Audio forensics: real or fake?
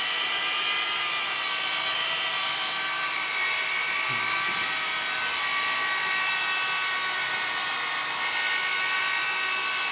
real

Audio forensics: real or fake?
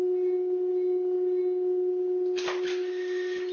real